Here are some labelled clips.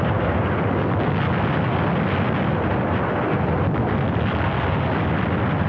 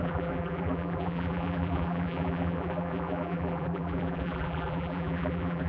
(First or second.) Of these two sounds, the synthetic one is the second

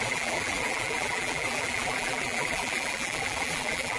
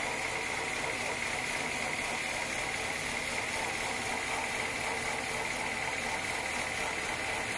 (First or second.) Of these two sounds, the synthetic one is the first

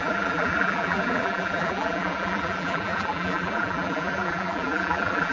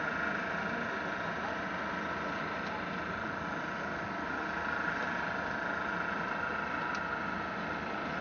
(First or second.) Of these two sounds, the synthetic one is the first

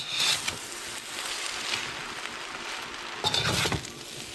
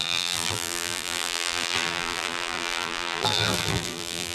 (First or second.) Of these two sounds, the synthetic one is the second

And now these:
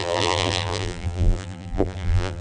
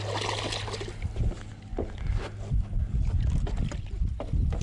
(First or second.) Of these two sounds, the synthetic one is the first